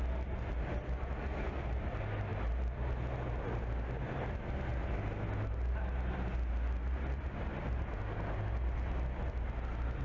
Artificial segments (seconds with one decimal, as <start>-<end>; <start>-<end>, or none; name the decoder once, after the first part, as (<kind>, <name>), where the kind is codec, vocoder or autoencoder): none